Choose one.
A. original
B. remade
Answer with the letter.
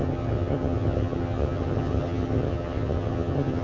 B